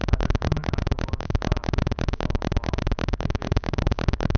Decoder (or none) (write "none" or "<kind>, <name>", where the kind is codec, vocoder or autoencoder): codec, DAC